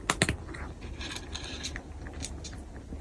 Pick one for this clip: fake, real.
real